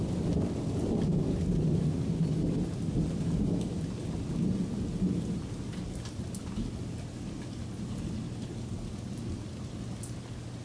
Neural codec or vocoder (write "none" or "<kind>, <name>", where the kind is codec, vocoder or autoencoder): none